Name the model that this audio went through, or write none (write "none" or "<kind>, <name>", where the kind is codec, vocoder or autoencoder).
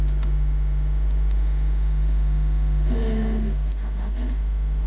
autoencoder, DAC-VAE